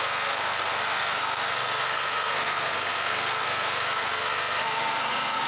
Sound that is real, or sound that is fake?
fake